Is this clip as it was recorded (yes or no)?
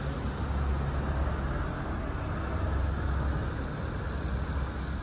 yes